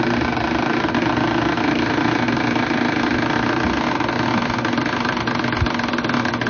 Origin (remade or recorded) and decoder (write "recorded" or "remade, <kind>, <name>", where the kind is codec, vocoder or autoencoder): recorded